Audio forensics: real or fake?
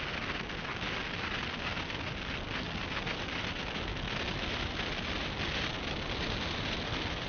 real